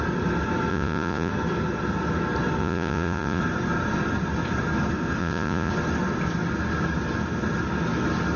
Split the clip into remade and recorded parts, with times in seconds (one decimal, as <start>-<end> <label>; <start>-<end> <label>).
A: 0.0-0.7 recorded; 0.7-1.3 remade; 1.3-2.6 recorded; 2.6-3.4 remade; 3.4-5.2 recorded; 5.2-5.7 remade; 5.7-8.4 recorded